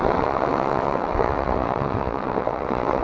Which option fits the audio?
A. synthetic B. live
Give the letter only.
A